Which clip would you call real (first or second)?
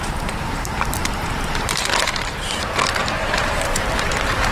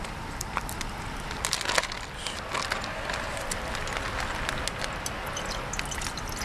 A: second